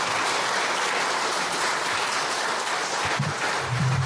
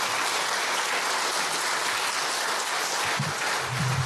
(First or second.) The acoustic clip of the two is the second